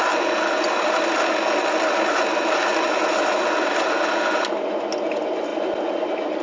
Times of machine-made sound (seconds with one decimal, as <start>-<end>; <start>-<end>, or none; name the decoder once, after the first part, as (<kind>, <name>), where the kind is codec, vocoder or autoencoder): none